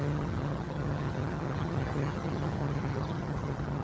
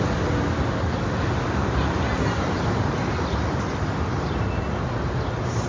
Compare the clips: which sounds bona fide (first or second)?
second